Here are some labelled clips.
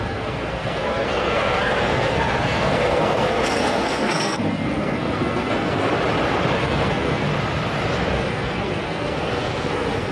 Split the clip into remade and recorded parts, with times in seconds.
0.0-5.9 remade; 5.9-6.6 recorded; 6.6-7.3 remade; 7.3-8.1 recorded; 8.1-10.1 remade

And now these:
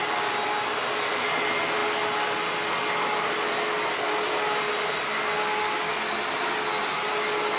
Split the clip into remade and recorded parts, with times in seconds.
0.0-7.6 recorded

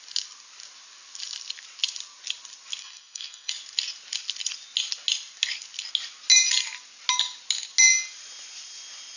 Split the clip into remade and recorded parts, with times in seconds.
0.0-2.8 recorded; 2.8-3.5 remade; 3.5-9.2 recorded